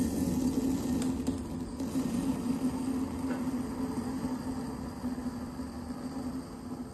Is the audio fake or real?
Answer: real